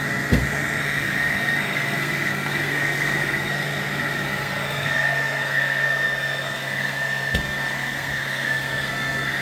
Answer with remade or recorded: remade